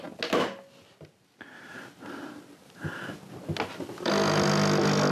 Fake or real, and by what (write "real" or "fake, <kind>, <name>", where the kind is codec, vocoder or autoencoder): real